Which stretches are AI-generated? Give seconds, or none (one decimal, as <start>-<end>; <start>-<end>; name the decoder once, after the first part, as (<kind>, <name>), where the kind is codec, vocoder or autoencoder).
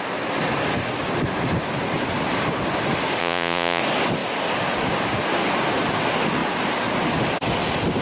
3.2-3.8 (vocoder, Vocos)